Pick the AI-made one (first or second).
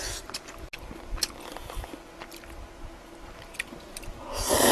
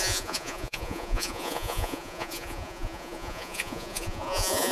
second